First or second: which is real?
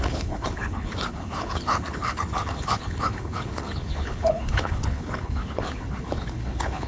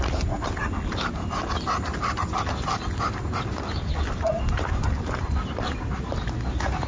second